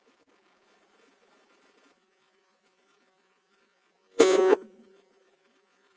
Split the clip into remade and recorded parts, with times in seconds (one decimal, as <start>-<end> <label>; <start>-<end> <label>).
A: 0.0-6.0 remade